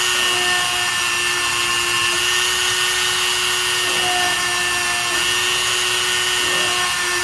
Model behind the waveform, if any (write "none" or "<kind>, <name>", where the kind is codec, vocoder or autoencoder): none